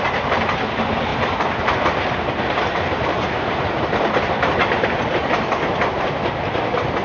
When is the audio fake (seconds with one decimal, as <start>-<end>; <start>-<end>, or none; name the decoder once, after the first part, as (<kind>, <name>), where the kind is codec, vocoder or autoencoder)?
1.1-5.3 (vocoder, BigVGAN v2)